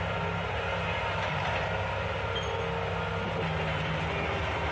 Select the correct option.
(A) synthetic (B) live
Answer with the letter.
B